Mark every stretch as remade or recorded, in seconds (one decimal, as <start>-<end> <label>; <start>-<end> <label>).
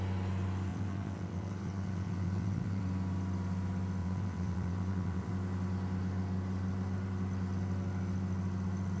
0.0-0.7 recorded; 0.7-2.8 remade; 2.8-4.0 recorded; 4.0-5.3 remade; 5.3-9.0 recorded